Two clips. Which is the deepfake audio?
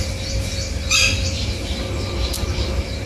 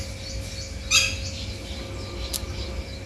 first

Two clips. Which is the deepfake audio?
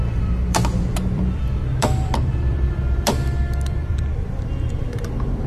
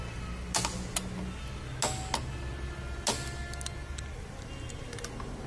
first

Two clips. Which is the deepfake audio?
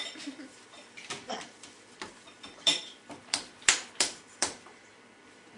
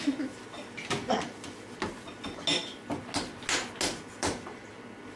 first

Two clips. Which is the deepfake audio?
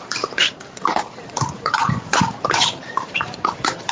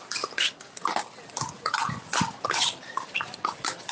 first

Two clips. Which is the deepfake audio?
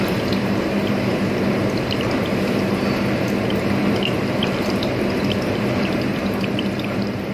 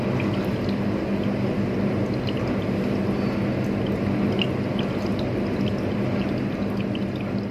first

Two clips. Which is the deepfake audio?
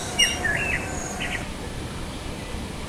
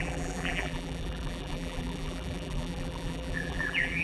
second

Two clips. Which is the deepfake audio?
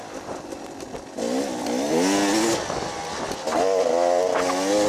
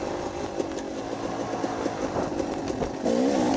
second